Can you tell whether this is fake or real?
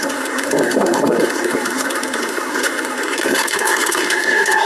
fake